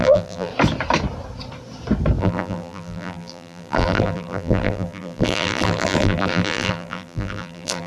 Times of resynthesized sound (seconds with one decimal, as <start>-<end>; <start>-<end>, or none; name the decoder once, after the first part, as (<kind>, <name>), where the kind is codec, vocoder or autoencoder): 0.0-0.5 (vocoder, BigVGAN v2); 2.2-7.9